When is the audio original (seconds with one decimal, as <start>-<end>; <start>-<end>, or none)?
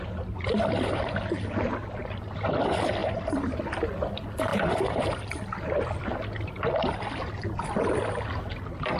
0.0-3.0; 3.6-4.5; 5.2-9.0